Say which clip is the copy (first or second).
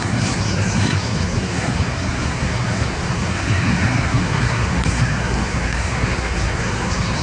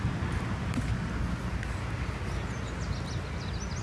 first